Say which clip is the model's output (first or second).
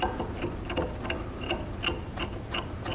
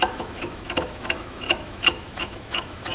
second